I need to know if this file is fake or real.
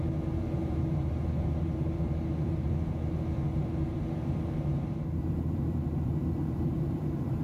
fake